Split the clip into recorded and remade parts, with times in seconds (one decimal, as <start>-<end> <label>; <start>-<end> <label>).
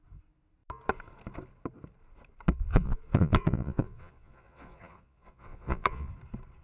0.0-2.7 recorded; 2.7-6.1 remade; 6.1-6.6 recorded